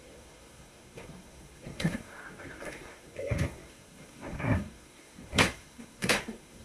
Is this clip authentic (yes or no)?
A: no